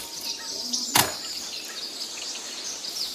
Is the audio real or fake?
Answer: real